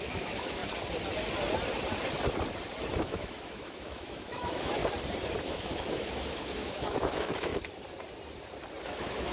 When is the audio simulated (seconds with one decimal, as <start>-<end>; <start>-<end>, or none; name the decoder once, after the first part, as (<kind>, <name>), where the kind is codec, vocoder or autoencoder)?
0.0-0.6 (autoencoder, DAC-VAE); 3.0-4.8; 5.4-7.5; 8.8-9.3